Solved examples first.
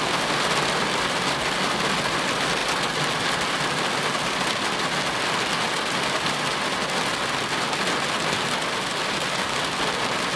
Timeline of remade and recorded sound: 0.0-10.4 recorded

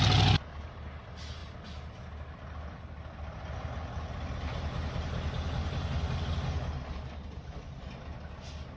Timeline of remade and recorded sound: 0.0-8.8 recorded

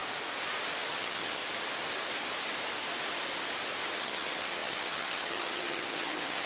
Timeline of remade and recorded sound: 0.0-0.9 recorded; 0.9-1.4 remade; 1.4-3.9 recorded; 3.9-6.5 remade

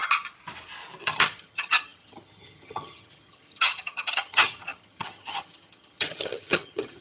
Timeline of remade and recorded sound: 0.0-1.0 recorded; 1.0-7.0 remade